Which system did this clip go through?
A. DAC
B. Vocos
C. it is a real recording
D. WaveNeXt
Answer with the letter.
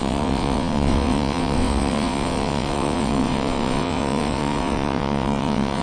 D